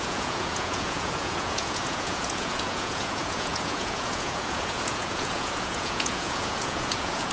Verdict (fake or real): fake